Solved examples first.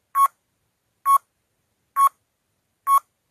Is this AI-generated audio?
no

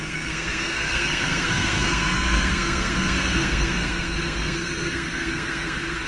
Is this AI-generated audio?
yes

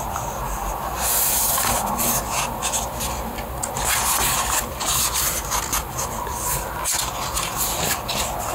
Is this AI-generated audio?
no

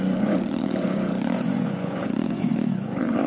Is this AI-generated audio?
yes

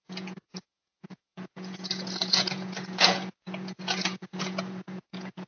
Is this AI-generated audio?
yes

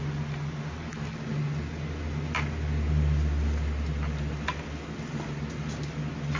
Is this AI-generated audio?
no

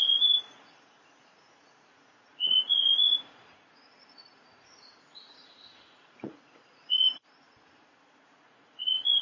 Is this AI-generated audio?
yes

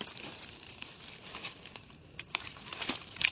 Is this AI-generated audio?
yes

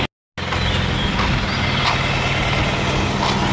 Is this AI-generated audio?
no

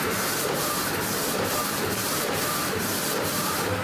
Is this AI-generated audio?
yes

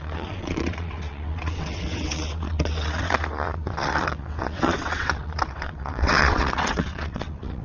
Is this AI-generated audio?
yes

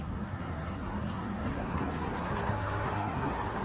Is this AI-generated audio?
yes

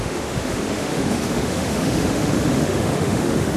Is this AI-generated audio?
yes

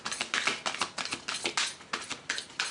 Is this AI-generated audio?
no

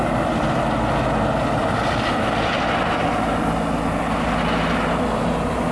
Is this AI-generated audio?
no